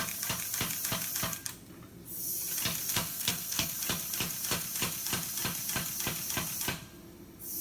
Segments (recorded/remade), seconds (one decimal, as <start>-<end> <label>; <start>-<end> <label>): 0.0-2.9 recorded; 2.9-3.7 remade; 3.7-7.6 recorded